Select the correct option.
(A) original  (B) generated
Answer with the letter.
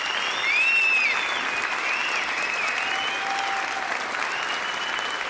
A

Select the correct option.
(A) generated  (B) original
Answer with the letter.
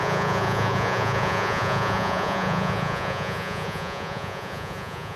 A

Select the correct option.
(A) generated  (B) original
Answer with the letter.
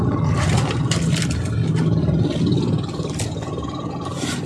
B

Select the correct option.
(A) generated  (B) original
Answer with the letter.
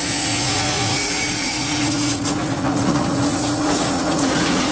A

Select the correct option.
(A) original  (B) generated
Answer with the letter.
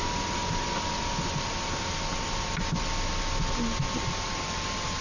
A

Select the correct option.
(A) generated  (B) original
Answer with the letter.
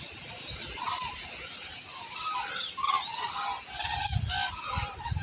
B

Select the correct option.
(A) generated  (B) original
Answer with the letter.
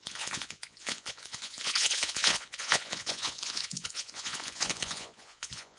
A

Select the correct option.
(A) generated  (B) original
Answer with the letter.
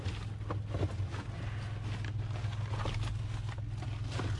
B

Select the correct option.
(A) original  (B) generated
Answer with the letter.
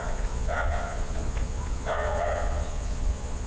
B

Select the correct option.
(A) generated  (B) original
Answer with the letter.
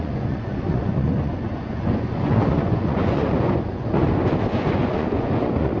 A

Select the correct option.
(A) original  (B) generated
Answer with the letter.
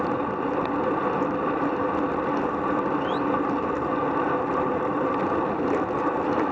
A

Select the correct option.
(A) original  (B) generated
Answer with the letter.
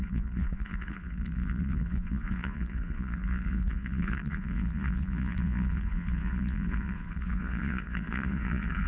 B